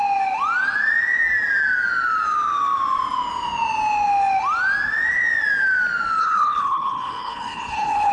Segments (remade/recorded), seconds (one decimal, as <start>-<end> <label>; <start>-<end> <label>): 0.0-6.2 recorded; 6.2-8.1 remade